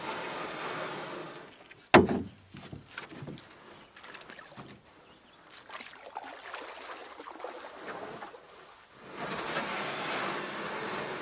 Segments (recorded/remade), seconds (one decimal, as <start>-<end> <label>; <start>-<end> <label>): 0.0-11.2 recorded